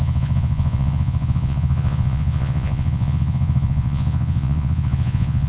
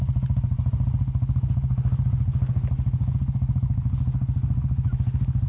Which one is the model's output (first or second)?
first